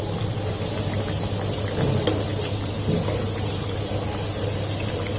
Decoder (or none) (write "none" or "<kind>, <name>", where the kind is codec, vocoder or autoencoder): none